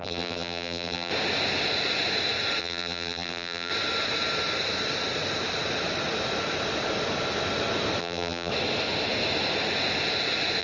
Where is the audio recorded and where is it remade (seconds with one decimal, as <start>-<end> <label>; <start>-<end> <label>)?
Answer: 0.0-1.1 remade; 1.1-2.6 recorded; 2.6-3.7 remade; 3.7-8.0 recorded; 8.0-8.5 remade; 8.5-10.6 recorded